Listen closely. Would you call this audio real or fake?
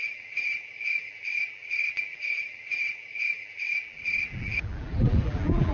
fake